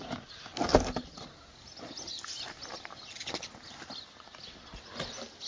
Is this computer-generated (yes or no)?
no